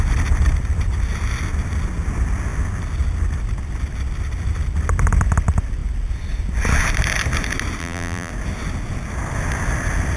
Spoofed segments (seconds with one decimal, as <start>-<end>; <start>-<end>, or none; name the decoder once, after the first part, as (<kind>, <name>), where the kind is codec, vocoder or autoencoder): 7.8-8.3 (vocoder, BigVGAN v2)